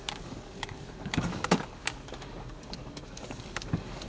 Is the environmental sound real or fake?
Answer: fake